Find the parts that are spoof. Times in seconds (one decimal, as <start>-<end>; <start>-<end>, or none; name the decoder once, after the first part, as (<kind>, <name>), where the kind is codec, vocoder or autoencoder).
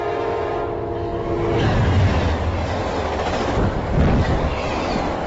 none